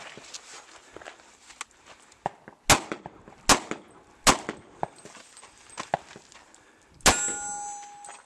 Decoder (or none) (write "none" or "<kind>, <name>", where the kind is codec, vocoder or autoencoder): none